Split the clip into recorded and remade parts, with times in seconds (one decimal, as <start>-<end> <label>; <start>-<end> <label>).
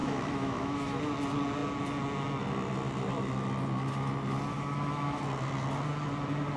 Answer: 0.0-1.0 remade; 1.0-4.5 recorded; 4.5-5.2 remade; 5.2-6.6 recorded